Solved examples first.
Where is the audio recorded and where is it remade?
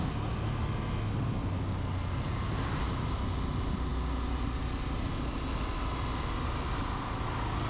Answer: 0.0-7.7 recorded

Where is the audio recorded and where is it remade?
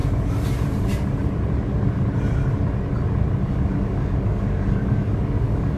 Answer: 0.0-3.4 recorded; 3.4-5.8 remade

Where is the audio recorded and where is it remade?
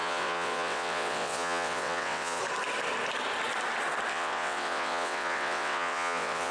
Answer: 0.0-2.4 remade; 2.4-4.1 recorded; 4.1-6.5 remade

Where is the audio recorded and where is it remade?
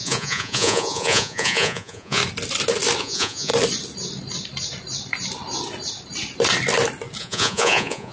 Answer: 0.0-2.2 remade; 2.2-3.0 recorded; 3.0-3.5 remade; 3.5-7.2 recorded; 7.2-8.1 remade